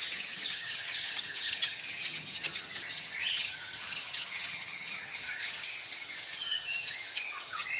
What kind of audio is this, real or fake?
fake